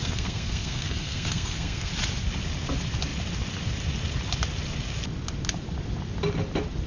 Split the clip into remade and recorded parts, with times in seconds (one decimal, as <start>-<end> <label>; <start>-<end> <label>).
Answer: 0.0-1.9 remade; 1.9-6.9 recorded